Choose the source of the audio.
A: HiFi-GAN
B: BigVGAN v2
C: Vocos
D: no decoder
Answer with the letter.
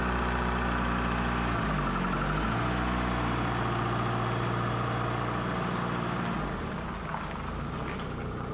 D